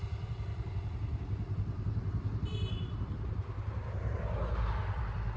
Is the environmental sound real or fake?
real